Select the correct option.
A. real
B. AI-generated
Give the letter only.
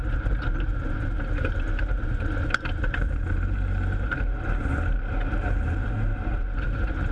B